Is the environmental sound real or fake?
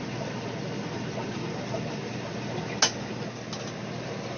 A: real